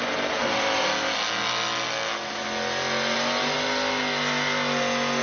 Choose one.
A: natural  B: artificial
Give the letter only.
A